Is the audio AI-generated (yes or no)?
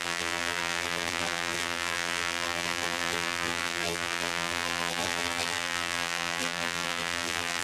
yes